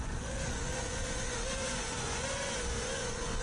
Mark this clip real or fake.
fake